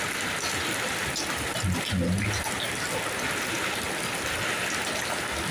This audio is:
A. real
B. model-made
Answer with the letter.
A